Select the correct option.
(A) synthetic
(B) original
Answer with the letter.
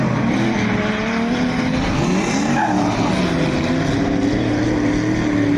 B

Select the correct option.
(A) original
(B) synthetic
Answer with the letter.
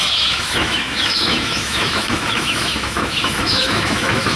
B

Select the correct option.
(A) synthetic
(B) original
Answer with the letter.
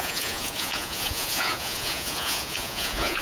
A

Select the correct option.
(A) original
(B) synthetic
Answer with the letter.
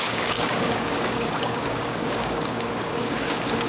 B